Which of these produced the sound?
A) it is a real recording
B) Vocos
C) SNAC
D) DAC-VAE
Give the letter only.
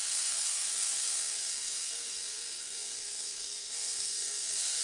C